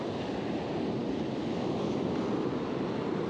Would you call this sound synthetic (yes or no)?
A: no